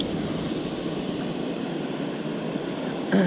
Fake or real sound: real